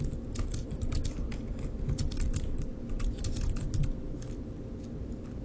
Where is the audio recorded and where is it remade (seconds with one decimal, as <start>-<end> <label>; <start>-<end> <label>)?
0.0-5.4 recorded